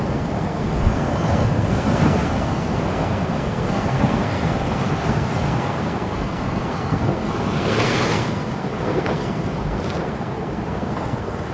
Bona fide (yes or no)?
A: no